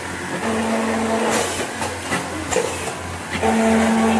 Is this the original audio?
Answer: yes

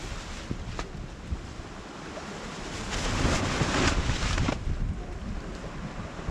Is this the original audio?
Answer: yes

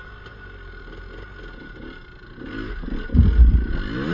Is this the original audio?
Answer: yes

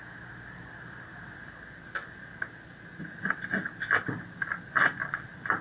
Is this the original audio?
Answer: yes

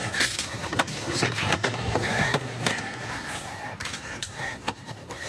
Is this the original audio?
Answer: no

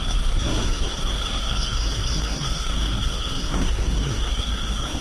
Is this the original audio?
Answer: no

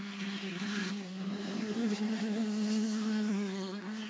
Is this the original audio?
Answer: no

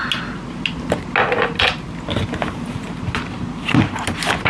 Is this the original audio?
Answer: yes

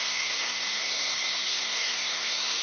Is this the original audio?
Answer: no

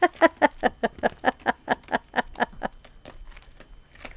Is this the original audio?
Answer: yes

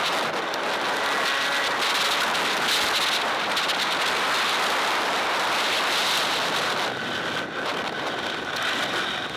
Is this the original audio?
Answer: yes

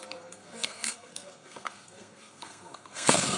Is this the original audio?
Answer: no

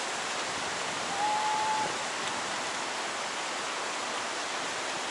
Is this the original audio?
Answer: yes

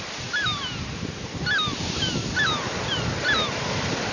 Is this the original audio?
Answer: yes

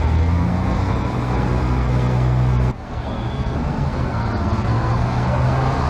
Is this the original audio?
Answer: no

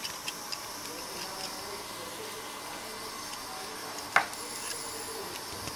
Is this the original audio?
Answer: yes